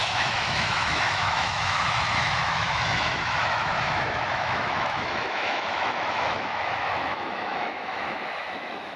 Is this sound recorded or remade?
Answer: remade